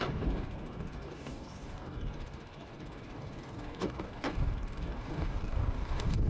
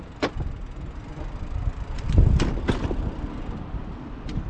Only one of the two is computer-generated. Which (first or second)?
first